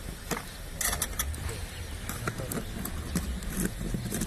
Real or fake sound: real